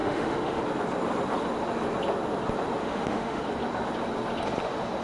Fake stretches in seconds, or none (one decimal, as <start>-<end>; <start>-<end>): 0.0-0.6; 2.8-3.4